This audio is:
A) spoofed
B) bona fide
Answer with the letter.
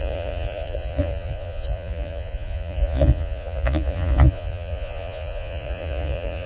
A